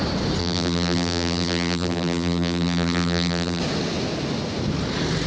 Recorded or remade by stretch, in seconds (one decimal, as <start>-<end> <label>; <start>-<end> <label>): 0.0-0.4 recorded; 0.4-3.6 remade; 3.6-5.3 recorded